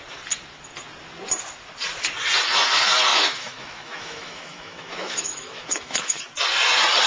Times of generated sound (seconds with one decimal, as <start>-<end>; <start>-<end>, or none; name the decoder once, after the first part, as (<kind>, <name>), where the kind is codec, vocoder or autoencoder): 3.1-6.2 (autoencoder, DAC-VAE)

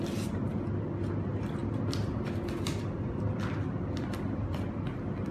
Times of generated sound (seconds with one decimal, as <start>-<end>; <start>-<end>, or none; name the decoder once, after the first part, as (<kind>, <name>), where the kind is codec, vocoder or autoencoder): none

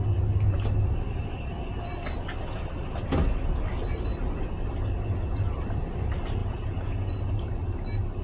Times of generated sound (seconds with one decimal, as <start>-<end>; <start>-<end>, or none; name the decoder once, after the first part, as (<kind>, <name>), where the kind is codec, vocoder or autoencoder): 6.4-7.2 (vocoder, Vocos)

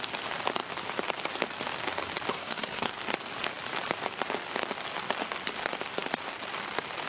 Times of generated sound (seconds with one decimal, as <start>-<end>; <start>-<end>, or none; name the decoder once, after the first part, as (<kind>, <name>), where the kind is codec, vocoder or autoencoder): 2.3-2.9 (codec, SNAC)